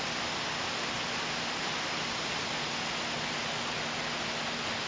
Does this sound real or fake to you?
real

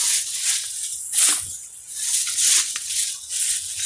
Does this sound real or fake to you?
fake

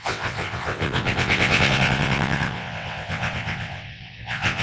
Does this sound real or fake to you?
fake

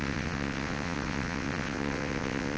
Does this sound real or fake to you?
fake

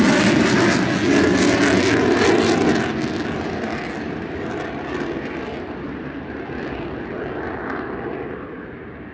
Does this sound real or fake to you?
real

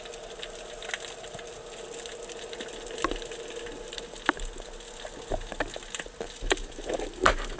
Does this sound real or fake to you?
real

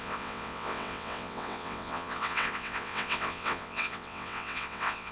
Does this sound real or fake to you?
fake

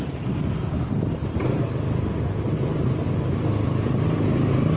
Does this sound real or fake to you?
real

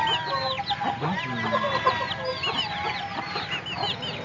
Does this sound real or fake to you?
real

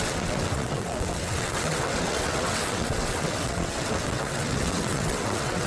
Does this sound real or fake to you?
fake